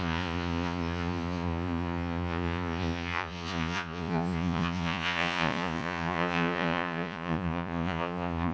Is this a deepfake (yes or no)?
yes